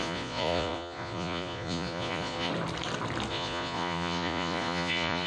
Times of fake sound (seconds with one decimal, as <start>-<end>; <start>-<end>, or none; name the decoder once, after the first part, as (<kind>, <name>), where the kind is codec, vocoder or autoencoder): 0.0-2.5 (vocoder, Vocos); 3.3-5.3